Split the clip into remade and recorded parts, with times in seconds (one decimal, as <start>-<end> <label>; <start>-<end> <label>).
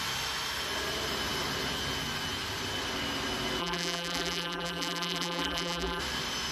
0.0-3.6 recorded; 3.6-6.0 remade; 6.0-6.5 recorded